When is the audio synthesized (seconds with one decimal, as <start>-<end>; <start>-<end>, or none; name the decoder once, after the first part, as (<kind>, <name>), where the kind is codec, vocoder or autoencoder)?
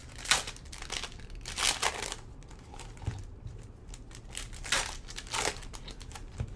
none